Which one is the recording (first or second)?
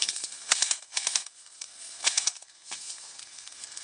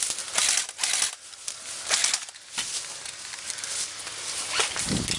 second